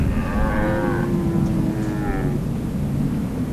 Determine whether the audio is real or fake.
real